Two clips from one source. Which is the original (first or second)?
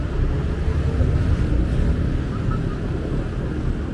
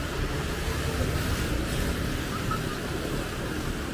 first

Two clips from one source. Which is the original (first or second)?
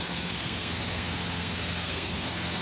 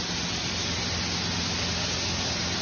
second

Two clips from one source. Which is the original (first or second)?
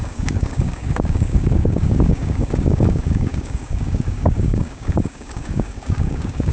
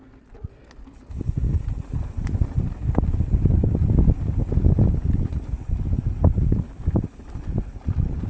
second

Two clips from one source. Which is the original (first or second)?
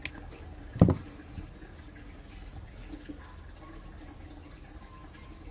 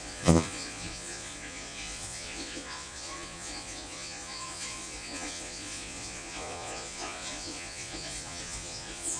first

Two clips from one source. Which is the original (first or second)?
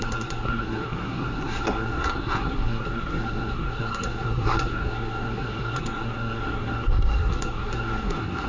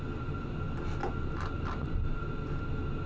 second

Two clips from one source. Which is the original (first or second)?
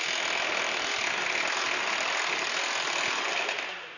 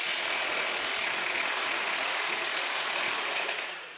first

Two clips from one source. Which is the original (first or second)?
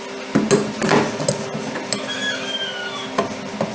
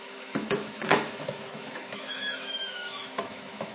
first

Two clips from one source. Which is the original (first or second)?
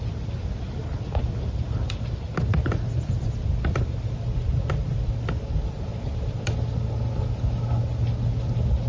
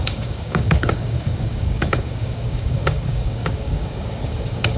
first